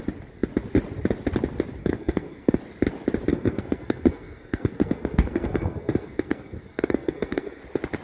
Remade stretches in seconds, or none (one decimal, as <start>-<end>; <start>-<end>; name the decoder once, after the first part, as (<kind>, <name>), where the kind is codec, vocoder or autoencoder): 1.8-2.6 (codec, SNAC); 3.3-7.6